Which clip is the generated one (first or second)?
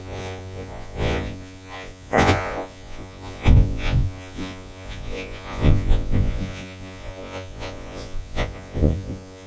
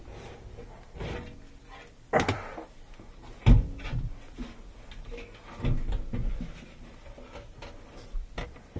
first